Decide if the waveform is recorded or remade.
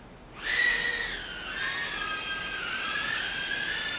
recorded